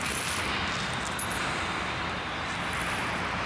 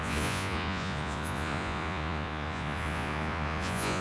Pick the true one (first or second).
first